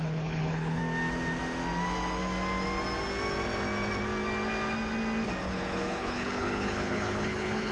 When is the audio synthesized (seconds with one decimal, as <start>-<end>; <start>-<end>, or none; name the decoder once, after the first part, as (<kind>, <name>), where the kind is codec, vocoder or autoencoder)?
0.0-0.8 (codec, HILCodec); 5.4-7.7